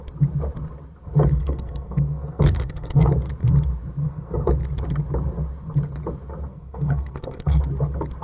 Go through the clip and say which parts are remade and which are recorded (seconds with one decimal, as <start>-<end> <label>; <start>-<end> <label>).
0.0-1.4 recorded; 1.4-3.1 remade; 3.1-4.0 recorded; 4.0-4.5 remade; 4.5-6.5 recorded; 6.5-7.6 remade; 7.6-8.2 recorded